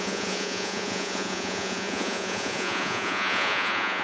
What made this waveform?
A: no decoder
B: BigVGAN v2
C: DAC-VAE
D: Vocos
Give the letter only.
D